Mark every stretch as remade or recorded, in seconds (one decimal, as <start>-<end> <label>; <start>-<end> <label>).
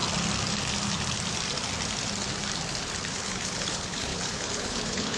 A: 0.0-3.1 recorded; 3.1-5.2 remade